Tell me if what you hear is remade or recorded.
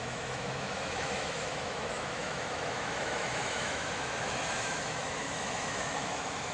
remade